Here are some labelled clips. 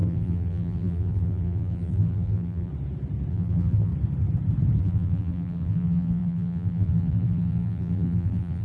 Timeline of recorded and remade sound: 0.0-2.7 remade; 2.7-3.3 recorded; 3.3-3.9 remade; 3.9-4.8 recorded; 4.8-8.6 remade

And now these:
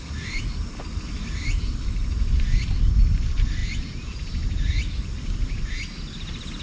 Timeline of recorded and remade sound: 0.0-6.6 recorded

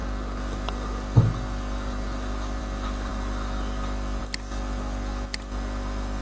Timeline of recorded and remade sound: 0.0-6.2 recorded

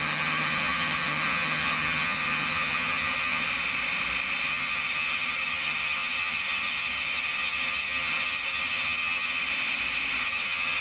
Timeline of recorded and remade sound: 0.0-3.5 remade; 3.5-4.5 recorded; 4.5-9.4 remade; 9.4-10.2 recorded; 10.2-10.8 remade